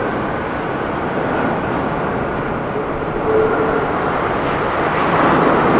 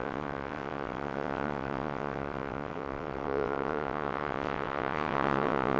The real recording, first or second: first